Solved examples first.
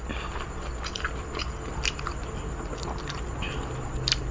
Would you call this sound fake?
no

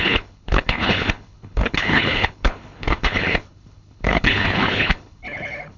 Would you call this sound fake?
yes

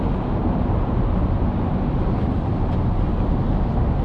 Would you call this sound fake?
no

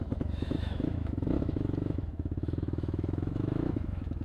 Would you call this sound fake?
yes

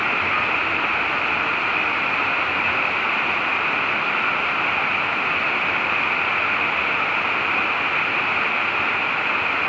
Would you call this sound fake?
no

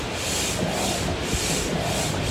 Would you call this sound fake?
no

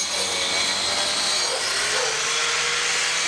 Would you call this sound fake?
no